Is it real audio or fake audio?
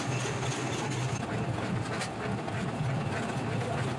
real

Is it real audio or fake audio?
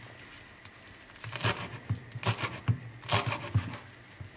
real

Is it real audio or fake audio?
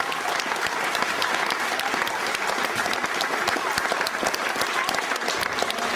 real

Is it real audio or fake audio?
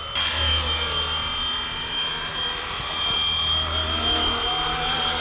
real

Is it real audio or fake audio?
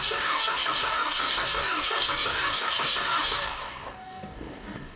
fake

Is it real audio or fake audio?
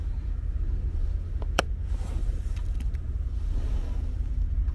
fake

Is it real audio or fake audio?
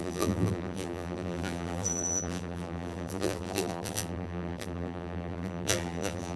fake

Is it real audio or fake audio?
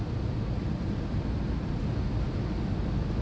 real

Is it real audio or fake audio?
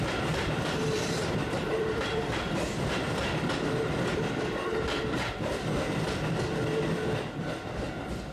fake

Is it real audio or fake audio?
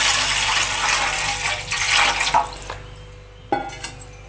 real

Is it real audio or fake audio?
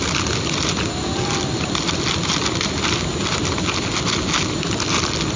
real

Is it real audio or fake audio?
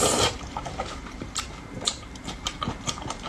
fake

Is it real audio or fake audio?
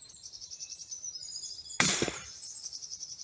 fake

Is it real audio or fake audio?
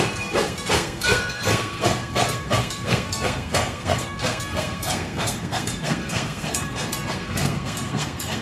fake